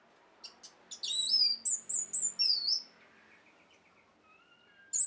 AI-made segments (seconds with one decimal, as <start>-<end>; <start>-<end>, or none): none